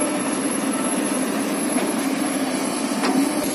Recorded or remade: remade